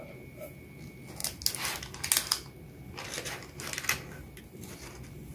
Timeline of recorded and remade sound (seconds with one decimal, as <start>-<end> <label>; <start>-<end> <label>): 0.0-5.3 recorded